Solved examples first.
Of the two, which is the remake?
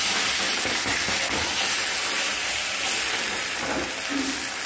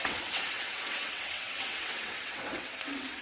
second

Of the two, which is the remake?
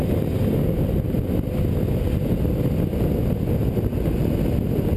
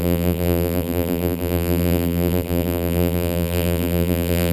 second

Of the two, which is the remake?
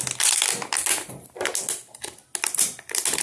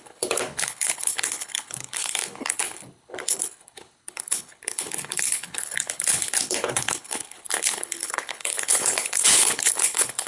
second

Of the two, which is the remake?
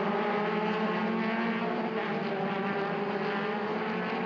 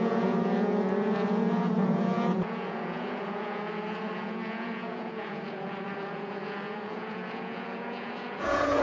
second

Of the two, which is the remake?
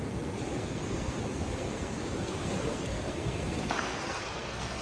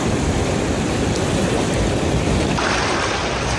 first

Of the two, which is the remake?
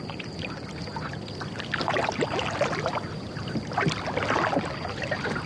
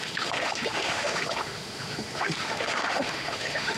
second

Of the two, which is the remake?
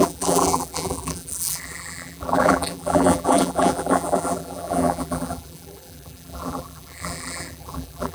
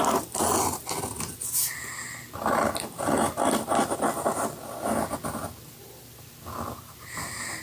first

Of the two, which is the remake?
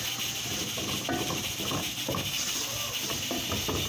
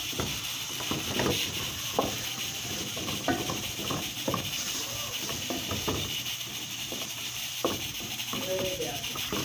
second